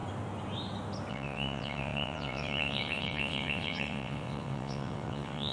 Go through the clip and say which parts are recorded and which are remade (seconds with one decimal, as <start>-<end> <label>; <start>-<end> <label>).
0.0-1.1 recorded; 1.1-5.5 remade